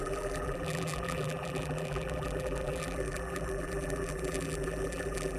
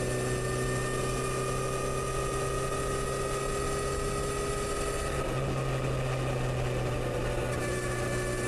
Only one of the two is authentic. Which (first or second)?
second